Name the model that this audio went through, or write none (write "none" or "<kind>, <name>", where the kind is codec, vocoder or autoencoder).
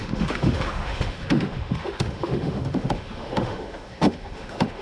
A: autoencoder, DAC-VAE